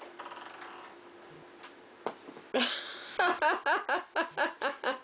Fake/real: real